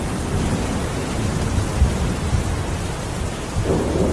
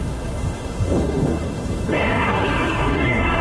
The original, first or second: first